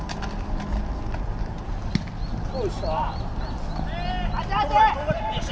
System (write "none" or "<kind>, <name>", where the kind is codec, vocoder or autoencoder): none